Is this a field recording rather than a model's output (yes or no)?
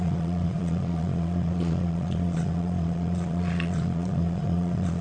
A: no